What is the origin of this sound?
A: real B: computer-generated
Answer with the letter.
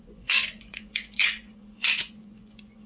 B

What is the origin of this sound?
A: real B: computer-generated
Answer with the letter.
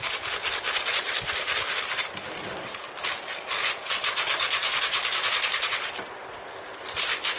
A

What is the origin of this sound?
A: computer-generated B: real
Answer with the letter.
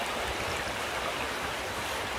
B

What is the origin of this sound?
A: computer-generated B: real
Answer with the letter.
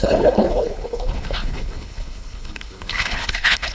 A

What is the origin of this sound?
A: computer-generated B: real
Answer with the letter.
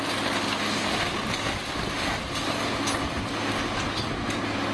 B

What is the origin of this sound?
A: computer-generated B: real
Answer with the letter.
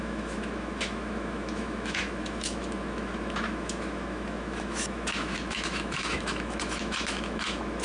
A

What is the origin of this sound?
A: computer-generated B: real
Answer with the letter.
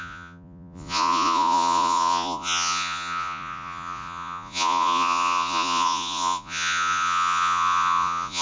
A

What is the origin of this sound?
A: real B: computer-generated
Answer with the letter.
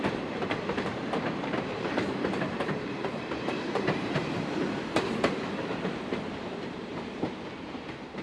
B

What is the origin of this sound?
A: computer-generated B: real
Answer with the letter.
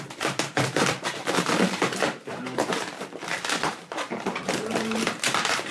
A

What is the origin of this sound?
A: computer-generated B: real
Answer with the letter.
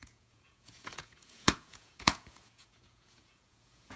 A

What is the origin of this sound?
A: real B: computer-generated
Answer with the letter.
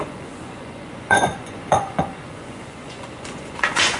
B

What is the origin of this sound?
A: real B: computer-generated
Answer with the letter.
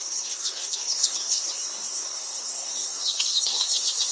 B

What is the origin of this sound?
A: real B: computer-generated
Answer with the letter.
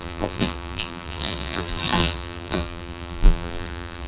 B